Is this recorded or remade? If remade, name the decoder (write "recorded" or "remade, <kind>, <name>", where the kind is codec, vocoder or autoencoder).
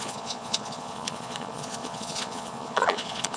remade, vocoder, Vocos